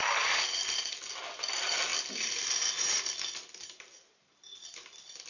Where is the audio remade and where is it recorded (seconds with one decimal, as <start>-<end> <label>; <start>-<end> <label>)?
0.0-5.3 recorded